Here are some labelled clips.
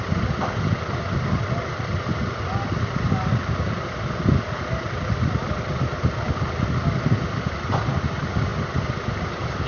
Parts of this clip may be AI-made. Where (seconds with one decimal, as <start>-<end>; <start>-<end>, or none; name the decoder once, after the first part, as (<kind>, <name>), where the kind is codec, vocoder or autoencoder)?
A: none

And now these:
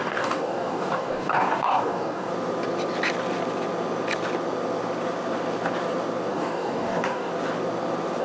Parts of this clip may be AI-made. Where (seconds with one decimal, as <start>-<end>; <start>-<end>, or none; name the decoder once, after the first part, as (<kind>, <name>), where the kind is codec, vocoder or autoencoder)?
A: 0.0-2.3 (codec, DAC); 6.3-7.3

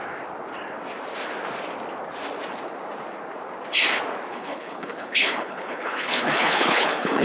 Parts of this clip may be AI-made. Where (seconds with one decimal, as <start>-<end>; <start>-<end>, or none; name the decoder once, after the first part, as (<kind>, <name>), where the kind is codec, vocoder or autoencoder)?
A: 4.3-7.2 (codec, HILCodec)

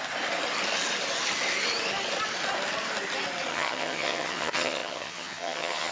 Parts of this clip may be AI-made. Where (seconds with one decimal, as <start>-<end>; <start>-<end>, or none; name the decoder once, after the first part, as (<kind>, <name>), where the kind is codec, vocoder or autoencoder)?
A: 3.5-5.9 (vocoder, HiFi-GAN)